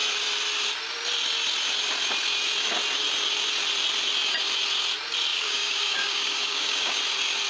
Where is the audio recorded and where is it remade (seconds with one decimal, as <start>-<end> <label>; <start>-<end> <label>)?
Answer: 0.0-5.3 recorded; 5.3-7.0 remade; 7.0-7.5 recorded